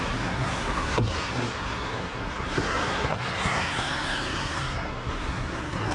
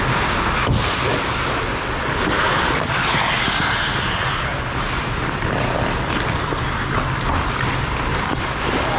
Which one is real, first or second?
second